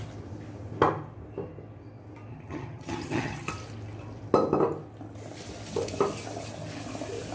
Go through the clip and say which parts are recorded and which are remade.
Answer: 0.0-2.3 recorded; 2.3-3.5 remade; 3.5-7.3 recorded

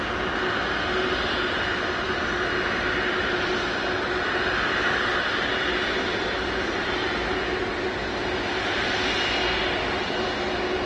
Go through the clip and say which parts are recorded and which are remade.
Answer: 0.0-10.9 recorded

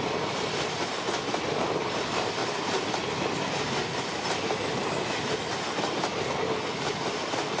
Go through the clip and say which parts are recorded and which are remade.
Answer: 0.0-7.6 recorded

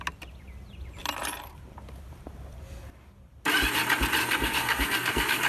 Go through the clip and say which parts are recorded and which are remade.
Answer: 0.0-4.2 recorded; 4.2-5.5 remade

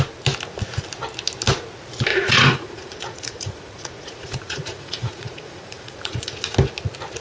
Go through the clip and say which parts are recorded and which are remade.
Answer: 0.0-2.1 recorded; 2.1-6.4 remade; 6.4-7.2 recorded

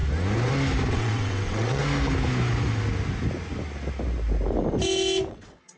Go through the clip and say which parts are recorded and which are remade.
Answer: 0.0-0.9 recorded; 0.9-1.8 remade; 1.8-5.3 recorded; 5.3-5.8 remade

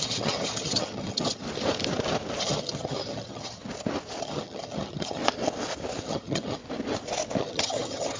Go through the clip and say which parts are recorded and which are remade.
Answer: 0.0-1.4 remade; 1.4-2.4 recorded; 2.4-3.6 remade; 3.6-4.2 recorded; 4.2-5.2 remade; 5.2-6.0 recorded; 6.0-6.6 remade; 6.6-7.4 recorded; 7.4-8.2 remade